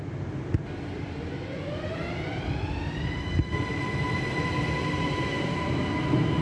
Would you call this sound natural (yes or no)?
yes